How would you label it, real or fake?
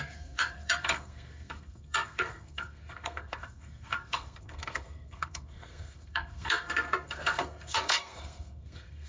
fake